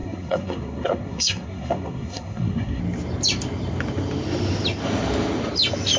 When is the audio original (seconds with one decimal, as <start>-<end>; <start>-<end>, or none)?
2.8-6.0